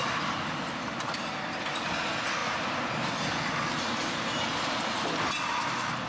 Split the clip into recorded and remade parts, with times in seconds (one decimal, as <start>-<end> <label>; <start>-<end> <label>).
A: 0.0-6.1 recorded